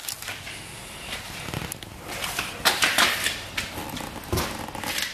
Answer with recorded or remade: recorded